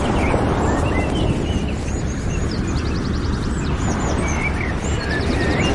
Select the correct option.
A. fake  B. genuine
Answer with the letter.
B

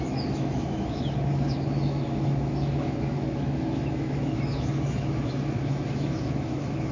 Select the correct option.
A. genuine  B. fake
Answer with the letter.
B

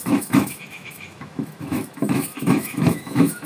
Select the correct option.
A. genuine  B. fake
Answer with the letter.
B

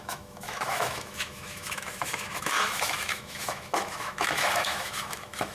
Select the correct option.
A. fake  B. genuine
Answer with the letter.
A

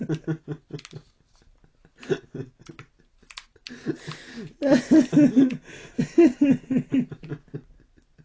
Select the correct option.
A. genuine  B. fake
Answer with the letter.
A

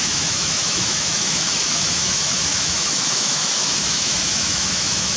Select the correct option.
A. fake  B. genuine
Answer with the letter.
A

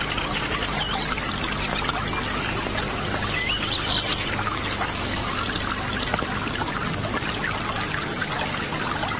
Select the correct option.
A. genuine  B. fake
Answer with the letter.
A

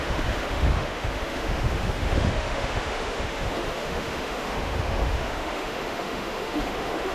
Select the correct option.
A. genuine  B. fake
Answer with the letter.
B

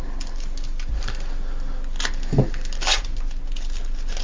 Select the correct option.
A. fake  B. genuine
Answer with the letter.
B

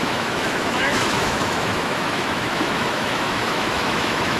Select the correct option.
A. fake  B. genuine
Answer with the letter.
A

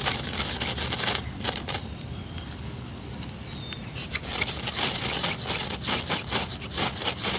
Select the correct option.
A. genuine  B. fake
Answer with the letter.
A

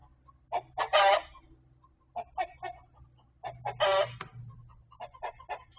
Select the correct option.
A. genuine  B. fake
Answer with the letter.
A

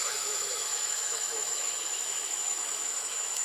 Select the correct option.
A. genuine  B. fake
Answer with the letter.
B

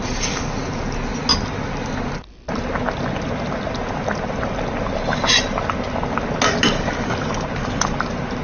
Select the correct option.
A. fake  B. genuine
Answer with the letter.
B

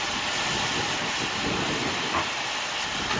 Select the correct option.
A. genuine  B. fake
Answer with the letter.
A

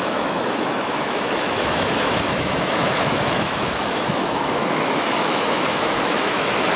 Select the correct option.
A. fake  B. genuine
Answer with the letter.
A